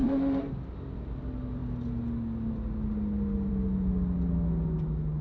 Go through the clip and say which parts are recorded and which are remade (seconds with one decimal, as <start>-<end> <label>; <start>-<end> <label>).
0.0-0.7 remade; 0.7-5.2 recorded